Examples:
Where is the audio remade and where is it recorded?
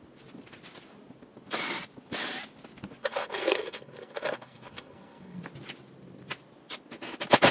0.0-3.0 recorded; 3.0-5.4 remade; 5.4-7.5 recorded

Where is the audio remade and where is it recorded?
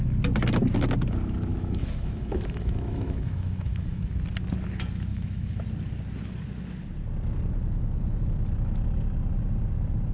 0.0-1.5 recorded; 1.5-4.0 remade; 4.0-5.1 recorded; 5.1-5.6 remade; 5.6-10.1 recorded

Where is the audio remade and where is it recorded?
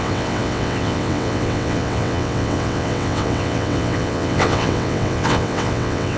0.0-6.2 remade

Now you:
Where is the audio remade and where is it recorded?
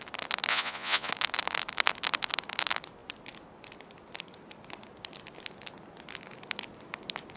0.0-0.5 recorded; 0.5-1.1 remade; 1.1-7.4 recorded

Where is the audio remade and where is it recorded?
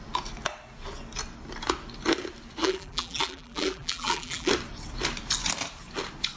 0.0-2.6 recorded; 2.6-4.5 remade; 4.5-6.4 recorded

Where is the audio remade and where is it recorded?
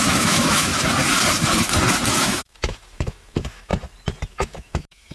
0.0-0.7 remade; 0.7-2.2 recorded; 2.2-3.7 remade; 3.7-4.3 recorded; 4.3-5.1 remade